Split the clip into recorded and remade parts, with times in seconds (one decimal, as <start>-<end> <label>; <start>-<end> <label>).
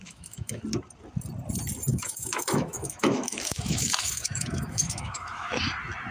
0.0-0.6 remade; 0.6-1.9 recorded; 1.9-5.6 remade; 5.6-6.1 recorded